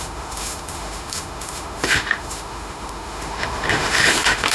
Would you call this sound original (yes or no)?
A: no